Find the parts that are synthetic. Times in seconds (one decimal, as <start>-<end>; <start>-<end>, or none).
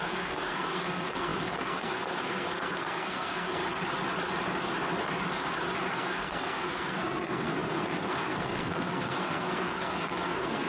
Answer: 0.0-3.6; 5.9-10.7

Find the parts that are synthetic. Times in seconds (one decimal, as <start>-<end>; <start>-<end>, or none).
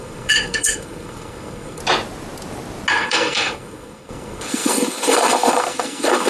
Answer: 0.0-1.8; 2.9-6.3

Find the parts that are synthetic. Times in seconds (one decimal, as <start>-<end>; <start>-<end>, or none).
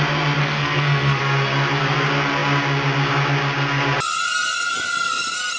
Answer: 0.4-1.2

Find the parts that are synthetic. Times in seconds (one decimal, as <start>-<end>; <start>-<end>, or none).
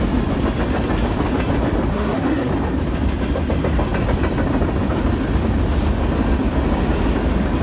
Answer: 1.9-2.5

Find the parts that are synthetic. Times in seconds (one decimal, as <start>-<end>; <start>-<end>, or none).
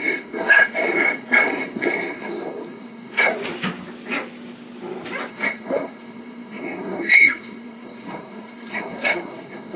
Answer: 0.0-3.3; 5.3-9.8